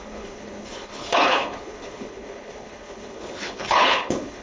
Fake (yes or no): yes